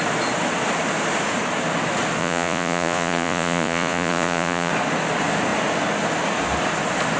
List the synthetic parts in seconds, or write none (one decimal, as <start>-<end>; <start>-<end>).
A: 2.2-4.7